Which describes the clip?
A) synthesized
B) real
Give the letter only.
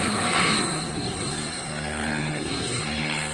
A